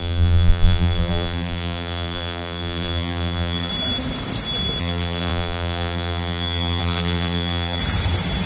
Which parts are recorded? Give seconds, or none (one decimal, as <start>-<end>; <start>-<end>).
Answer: 3.7-4.8; 7.8-8.5

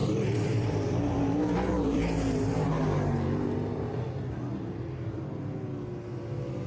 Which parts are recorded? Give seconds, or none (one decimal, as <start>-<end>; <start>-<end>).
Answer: 4.0-6.7

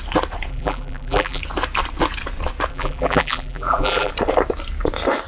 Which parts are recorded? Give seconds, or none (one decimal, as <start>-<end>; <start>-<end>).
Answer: 0.0-0.5; 1.4-2.7; 4.1-5.3

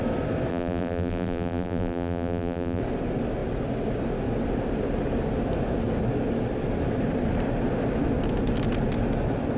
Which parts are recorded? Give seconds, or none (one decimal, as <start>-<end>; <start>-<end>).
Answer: 0.0-0.5; 2.8-9.6

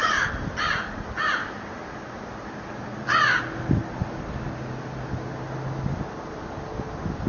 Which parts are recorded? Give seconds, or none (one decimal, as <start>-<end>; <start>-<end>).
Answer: 0.6-1.4; 3.0-7.3

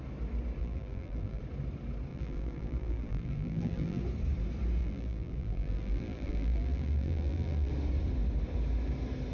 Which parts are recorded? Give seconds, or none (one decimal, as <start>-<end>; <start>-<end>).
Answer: 0.0-0.6; 1.4-2.1; 4.0-4.8; 7.7-9.3

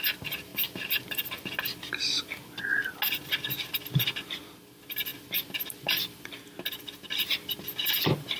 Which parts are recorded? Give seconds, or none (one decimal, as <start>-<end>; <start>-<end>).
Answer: 0.0-0.5; 1.6-5.1; 6.4-8.4